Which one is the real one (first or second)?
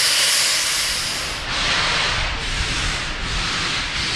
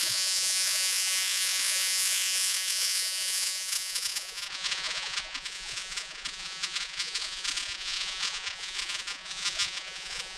first